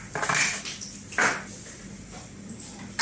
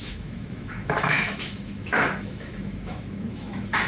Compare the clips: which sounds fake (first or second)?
second